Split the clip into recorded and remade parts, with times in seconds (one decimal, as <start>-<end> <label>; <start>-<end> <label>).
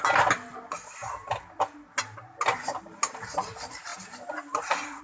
0.0-5.0 recorded